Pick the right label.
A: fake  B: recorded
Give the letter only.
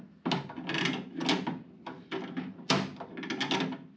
B